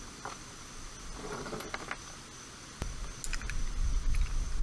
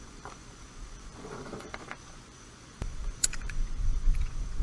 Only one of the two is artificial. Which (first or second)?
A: second